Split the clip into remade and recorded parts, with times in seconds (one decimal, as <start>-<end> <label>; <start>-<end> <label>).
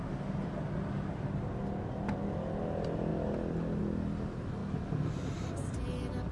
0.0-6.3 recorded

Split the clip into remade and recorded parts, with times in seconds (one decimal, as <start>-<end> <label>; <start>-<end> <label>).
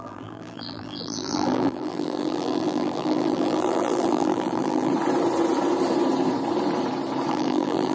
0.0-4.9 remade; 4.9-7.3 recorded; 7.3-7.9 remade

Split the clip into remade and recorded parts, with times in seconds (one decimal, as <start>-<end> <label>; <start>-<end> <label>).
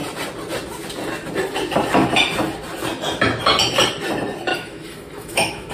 0.0-4.5 recorded; 4.5-5.7 remade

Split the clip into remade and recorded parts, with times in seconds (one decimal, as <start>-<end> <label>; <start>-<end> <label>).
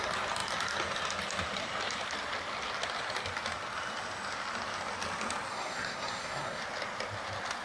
0.0-5.5 recorded; 5.5-6.6 remade; 6.6-7.6 recorded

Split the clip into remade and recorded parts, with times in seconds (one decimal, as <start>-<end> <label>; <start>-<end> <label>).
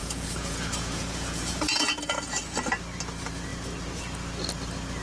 0.0-2.4 remade; 2.4-5.0 recorded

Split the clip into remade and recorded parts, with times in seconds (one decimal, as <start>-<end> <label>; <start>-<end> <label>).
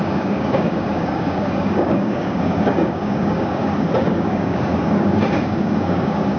0.0-6.4 remade